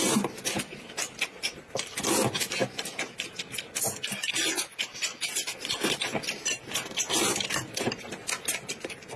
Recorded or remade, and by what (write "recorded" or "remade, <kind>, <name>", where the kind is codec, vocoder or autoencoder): recorded